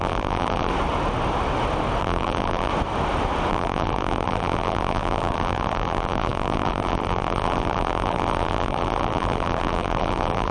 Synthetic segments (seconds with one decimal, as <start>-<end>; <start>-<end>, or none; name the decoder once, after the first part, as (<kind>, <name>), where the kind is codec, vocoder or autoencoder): 0.0-0.7 (vocoder, BigVGAN v2); 2.0-2.7; 3.5-10.5